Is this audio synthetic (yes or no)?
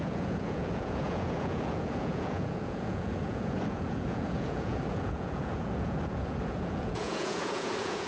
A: yes